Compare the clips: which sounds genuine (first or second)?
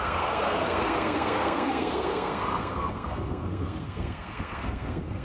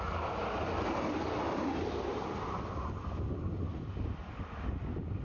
second